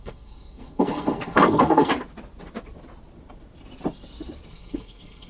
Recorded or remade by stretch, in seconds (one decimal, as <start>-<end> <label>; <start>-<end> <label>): 0.0-1.9 remade; 1.9-4.5 recorded; 4.5-5.3 remade